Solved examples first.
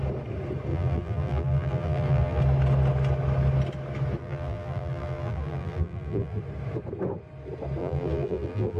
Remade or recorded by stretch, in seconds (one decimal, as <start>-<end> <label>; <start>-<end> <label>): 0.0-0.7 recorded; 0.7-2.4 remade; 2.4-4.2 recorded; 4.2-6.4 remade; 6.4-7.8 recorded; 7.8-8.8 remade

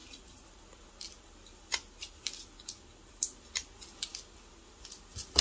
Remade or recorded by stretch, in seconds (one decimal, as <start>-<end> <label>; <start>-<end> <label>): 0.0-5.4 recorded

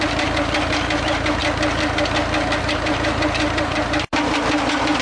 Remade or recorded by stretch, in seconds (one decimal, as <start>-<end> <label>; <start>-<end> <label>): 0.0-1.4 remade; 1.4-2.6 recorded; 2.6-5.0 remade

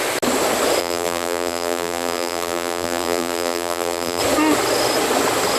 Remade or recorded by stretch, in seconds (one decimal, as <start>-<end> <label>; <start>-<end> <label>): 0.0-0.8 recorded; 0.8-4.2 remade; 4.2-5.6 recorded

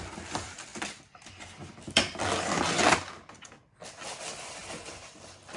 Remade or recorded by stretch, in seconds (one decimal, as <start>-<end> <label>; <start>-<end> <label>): 0.0-5.6 remade